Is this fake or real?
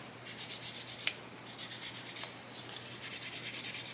real